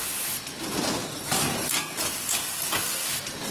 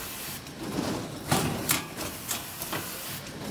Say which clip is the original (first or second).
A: first